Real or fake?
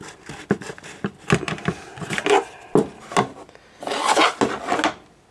real